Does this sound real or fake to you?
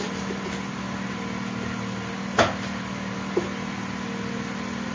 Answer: real